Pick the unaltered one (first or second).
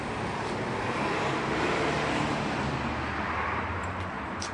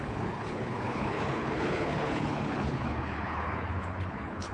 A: first